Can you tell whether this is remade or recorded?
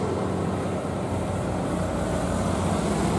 recorded